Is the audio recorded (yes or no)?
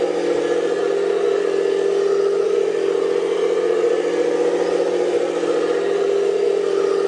yes